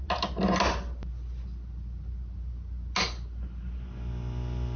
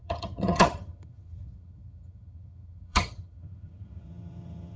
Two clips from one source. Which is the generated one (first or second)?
second